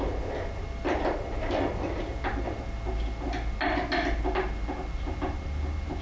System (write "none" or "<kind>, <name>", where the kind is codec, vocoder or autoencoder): none